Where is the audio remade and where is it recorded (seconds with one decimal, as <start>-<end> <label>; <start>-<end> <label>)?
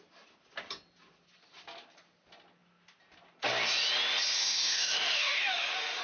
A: 0.0-4.4 recorded; 4.4-6.0 remade